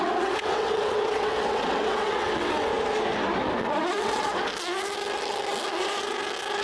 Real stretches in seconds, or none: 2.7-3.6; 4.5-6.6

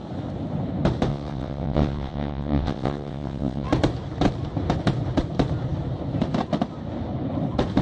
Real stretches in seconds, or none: 0.0-1.1; 3.7-7.8

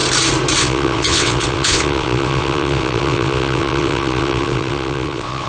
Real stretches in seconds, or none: 0.0-0.6

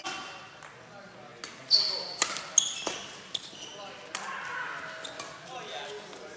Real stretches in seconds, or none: 0.0-6.4